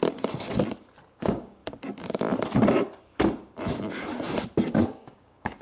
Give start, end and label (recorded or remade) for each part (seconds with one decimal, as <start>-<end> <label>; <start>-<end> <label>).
0.0-1.1 recorded; 1.1-1.6 remade; 1.6-4.8 recorded; 4.8-5.6 remade